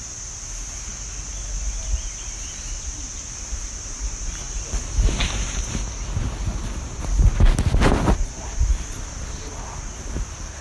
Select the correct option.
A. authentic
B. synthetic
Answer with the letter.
A